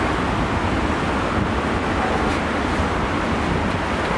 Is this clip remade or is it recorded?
recorded